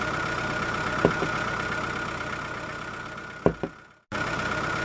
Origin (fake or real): real